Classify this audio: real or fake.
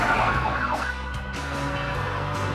fake